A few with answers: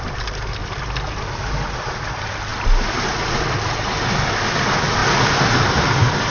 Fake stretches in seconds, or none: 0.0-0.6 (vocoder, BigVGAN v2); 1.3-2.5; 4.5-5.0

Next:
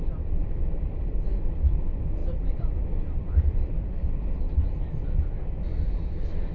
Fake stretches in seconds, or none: 0.4-1.1 (vocoder, BigVGAN v2); 2.2-4.4